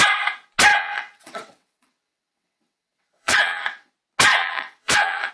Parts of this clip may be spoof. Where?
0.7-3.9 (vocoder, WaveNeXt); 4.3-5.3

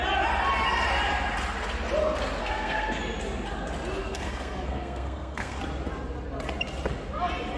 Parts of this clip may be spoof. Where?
2.4-3.0 (codec, SNAC); 4.0-5.6

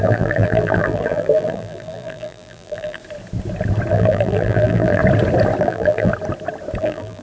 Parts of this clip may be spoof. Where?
0.0-3.0 (vocoder, BigVGAN v2); 3.9-5.0; 5.6-6.1; 6.8-7.2

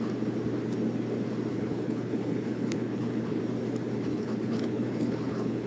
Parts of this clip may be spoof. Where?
1.5-3.4 (codec, HILCodec); 4.1-5.7